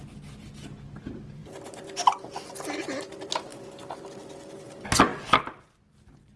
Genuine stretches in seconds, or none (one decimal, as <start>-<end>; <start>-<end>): 0.0-6.4